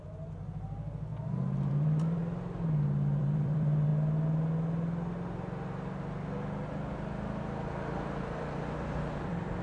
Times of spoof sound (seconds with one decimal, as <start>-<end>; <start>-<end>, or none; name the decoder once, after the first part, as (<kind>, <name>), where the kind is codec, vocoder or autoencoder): 0.0-1.1 (vocoder, BigVGAN v2); 1.7-2.2; 3.2-3.9; 8.2-9.6